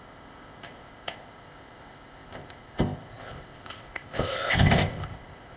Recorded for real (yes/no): no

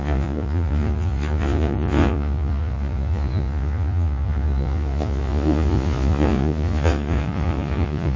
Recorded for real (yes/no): no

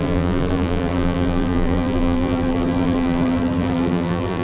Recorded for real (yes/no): no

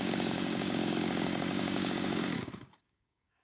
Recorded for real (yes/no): no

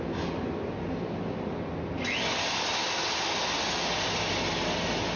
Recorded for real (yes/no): yes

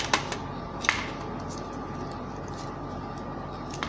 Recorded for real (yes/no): yes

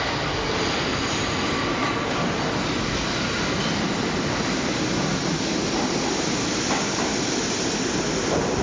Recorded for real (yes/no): yes